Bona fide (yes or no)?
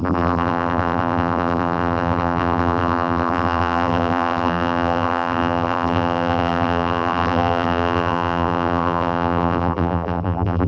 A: no